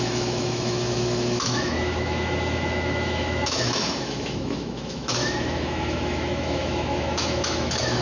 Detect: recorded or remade remade